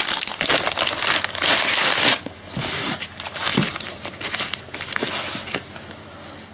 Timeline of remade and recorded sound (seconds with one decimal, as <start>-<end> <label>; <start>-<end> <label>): 0.0-6.5 recorded